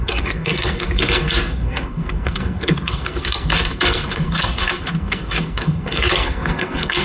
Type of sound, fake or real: fake